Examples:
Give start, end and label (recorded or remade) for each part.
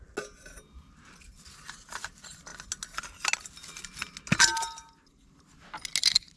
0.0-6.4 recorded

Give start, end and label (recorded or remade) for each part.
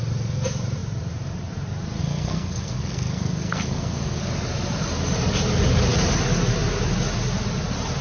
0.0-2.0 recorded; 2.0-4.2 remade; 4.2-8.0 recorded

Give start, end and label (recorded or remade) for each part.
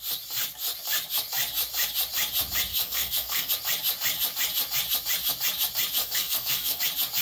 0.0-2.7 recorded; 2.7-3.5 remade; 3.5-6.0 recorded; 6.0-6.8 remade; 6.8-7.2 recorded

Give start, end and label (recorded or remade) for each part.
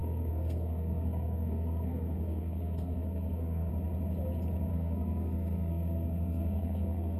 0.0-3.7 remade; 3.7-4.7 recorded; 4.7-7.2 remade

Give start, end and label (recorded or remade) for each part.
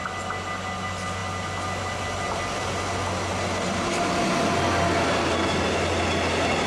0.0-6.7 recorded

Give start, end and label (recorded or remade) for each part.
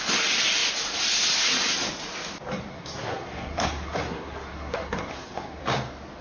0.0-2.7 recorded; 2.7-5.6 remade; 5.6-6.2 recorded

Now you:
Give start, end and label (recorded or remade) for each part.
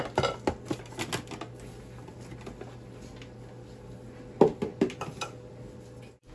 0.0-6.3 recorded